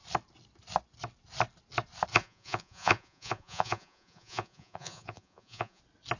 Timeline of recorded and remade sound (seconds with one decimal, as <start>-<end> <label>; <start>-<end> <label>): 0.0-2.1 recorded; 2.1-5.8 remade; 5.8-6.2 recorded